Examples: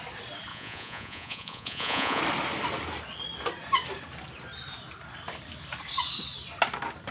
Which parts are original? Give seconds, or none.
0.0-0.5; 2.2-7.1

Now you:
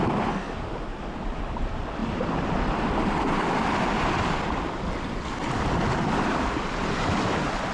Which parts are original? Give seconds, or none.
0.0-0.9; 1.4-2.0; 5.3-7.7

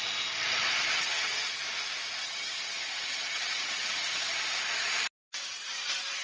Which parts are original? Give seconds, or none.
0.0-0.9; 1.6-2.2; 4.4-6.2

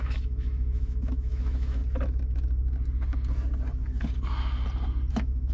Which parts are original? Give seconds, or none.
1.8-5.1

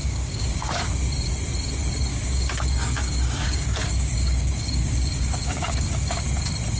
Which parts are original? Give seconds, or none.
0.8-2.1; 6.2-6.8

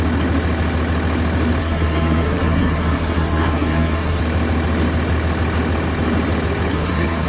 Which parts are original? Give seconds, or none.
0.0-1.6; 4.2-6.7

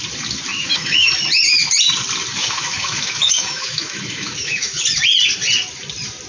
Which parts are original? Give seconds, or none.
0.0-0.5; 1.1-2.3; 4.8-6.3

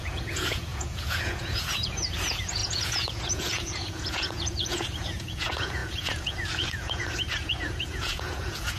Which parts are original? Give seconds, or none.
none